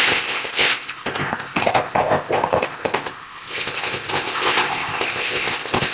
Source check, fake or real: fake